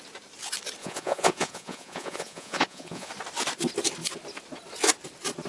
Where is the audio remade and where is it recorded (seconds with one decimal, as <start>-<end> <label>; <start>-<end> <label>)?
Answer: 0.0-0.8 recorded; 0.8-3.1 remade; 3.1-5.5 recorded